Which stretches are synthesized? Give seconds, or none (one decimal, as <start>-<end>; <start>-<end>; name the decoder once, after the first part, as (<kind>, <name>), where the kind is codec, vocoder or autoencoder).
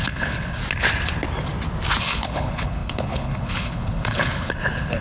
0.0-0.6 (codec, HILCodec); 2.0-5.0